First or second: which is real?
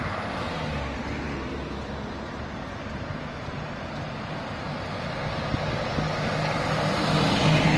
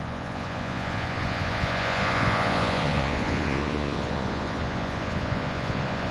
first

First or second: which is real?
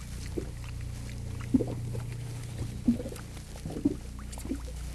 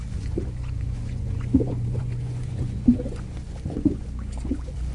first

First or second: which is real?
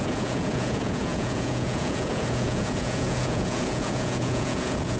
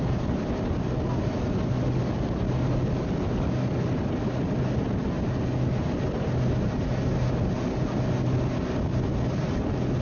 second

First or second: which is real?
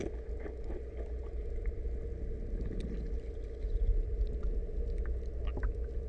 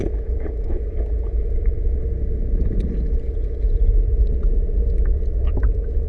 first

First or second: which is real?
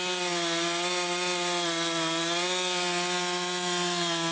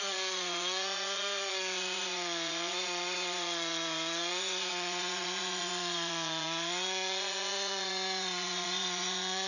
first